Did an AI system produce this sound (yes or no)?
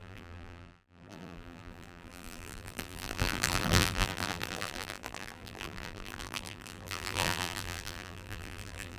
yes